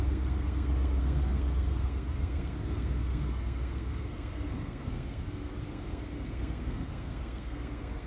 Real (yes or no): no